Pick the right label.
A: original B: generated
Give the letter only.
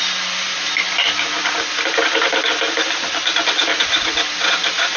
A